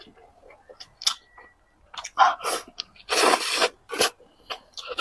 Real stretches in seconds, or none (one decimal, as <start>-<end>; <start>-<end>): 1.1-2.1; 3.6-4.5